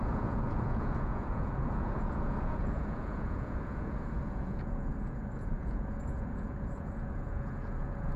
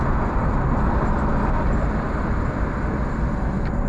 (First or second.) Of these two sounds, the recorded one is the second